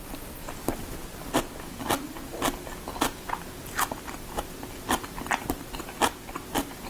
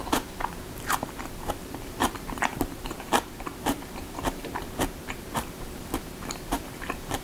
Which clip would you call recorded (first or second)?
first